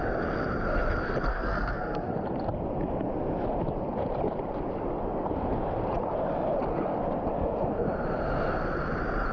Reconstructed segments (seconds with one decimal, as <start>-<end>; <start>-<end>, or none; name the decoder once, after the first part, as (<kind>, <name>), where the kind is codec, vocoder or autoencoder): 1.3-2.1 (codec, SNAC)